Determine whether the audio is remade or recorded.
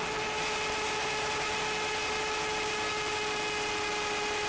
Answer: recorded